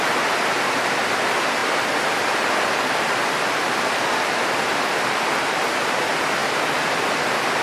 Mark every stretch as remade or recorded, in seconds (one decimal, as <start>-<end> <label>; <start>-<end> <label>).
0.0-1.6 recorded; 1.6-3.0 remade; 3.0-4.7 recorded; 4.7-5.3 remade; 5.3-6.4 recorded; 6.4-7.6 remade

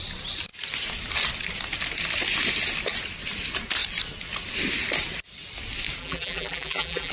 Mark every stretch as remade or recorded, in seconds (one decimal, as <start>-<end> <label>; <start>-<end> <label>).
0.0-6.0 recorded; 6.0-7.1 remade

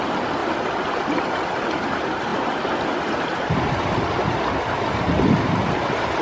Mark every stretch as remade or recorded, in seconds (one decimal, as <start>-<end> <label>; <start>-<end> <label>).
0.0-0.4 remade; 0.4-1.0 recorded; 1.0-6.2 remade

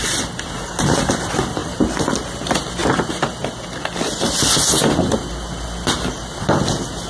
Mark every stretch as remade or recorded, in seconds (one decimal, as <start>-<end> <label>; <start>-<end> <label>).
0.0-7.1 recorded

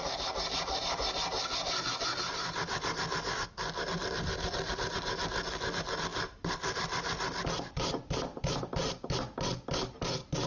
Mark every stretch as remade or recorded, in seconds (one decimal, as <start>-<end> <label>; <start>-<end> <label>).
0.0-10.5 recorded

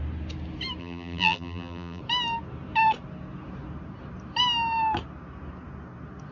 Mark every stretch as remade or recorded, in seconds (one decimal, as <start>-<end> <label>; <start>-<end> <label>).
0.0-0.8 recorded; 0.8-2.0 remade; 2.0-6.3 recorded

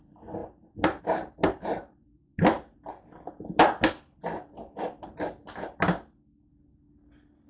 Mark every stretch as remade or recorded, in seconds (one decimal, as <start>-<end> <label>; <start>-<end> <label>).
0.0-7.5 recorded

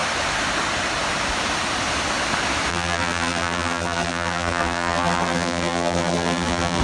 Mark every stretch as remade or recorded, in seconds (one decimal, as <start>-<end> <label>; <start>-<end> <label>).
0.0-2.7 recorded; 2.7-6.8 remade